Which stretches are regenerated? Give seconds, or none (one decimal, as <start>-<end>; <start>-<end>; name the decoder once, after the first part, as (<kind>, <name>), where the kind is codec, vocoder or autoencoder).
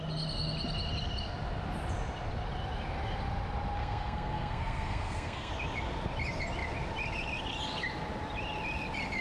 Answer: 3.8-5.5 (codec, SNAC)